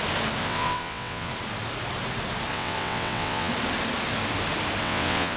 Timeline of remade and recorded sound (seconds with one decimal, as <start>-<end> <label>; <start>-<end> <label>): 0.0-0.4 recorded; 0.4-1.3 remade; 1.3-2.5 recorded; 2.5-3.5 remade; 3.5-4.8 recorded; 4.8-5.4 remade